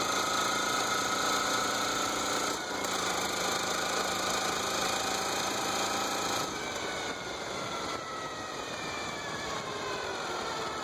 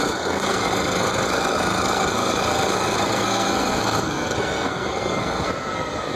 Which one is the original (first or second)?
first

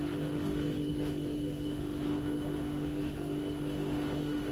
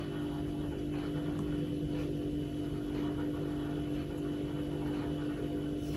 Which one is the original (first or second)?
second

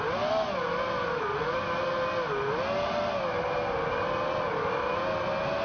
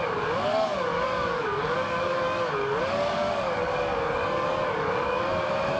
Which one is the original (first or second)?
first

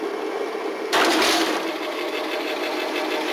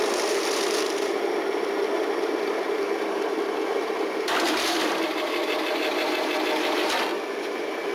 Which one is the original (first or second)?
first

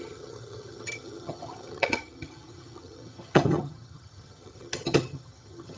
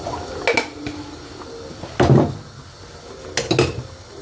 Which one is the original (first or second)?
second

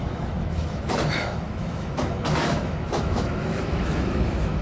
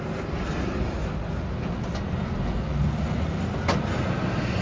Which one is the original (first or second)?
second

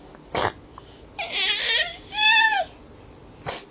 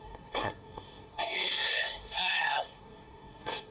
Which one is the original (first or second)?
first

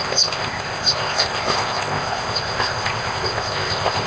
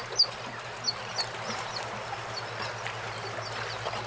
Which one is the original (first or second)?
second